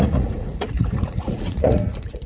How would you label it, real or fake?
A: fake